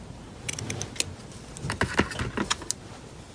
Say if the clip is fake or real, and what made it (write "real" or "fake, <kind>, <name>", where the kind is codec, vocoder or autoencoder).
real